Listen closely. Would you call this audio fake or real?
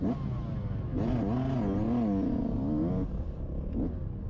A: real